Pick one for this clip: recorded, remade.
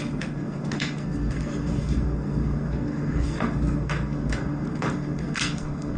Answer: remade